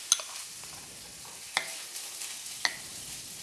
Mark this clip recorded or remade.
recorded